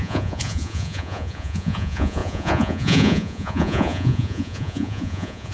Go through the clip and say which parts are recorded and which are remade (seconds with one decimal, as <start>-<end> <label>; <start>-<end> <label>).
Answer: 0.0-5.5 remade